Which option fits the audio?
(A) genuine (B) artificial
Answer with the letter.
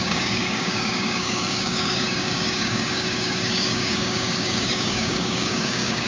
B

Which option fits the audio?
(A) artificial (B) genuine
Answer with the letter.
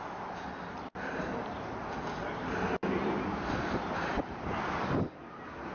B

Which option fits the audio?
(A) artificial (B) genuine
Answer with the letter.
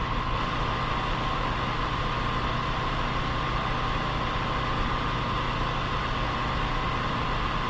B